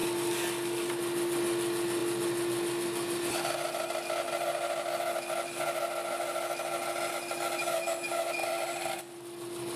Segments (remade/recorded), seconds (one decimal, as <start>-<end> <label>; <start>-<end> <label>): 0.0-9.8 recorded